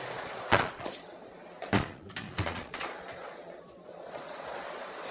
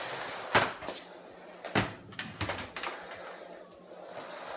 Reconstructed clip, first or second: first